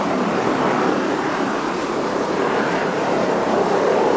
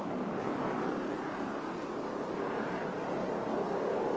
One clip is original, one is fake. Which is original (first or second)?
second